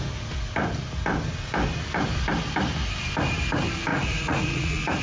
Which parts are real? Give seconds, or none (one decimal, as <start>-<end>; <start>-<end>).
0.0-3.9